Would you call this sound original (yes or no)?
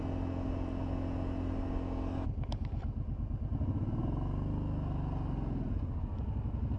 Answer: yes